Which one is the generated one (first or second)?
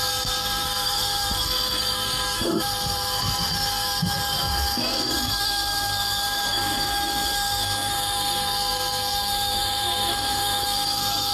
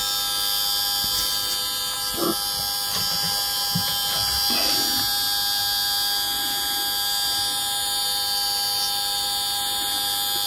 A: first